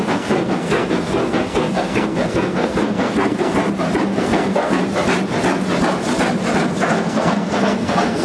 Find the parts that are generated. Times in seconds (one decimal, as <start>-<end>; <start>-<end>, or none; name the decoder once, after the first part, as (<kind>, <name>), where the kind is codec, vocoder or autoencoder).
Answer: 0.0-3.6 (codec, SNAC); 4.1-4.8; 6.7-8.2